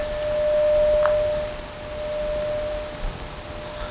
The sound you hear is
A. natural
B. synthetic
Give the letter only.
A